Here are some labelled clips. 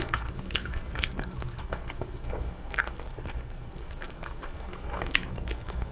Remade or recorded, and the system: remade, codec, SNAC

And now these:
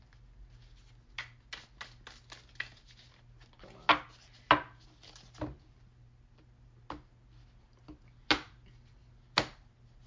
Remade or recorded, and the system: recorded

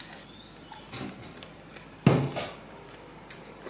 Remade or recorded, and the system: recorded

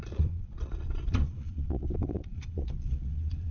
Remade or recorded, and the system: remade, vocoder, Vocos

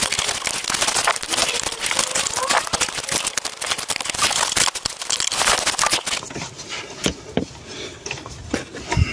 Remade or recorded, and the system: recorded